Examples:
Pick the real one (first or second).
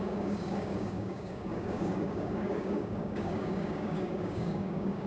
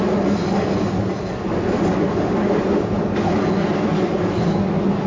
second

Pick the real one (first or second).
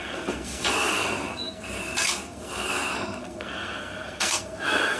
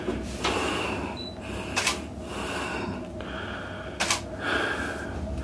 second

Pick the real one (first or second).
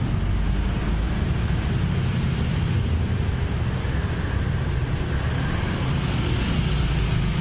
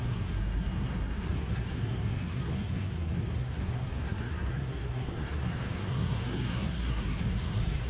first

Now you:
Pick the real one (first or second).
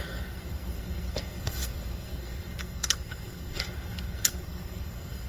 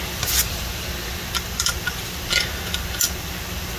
second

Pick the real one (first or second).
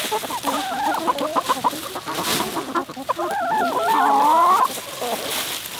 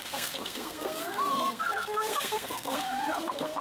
first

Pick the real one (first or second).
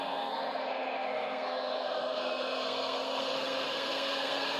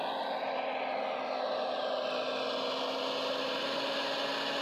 second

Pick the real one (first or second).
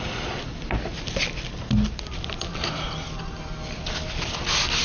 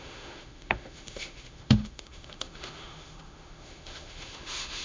first